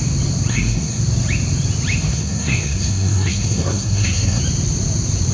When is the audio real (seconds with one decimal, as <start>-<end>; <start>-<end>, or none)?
0.0-0.5; 1.0-2.1; 4.4-5.3